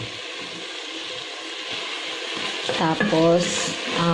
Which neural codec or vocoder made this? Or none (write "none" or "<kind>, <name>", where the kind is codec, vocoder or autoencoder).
none